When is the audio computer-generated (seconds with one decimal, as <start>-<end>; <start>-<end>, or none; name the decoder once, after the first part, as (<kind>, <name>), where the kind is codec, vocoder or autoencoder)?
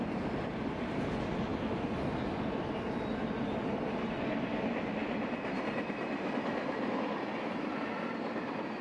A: none